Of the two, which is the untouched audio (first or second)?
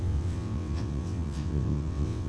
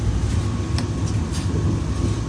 second